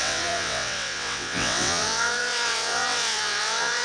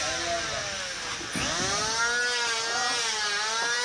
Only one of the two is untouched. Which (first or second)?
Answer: second